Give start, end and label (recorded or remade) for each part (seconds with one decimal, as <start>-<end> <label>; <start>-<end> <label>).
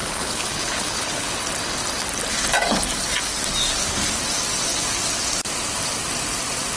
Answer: 0.0-1.3 remade; 1.3-6.8 recorded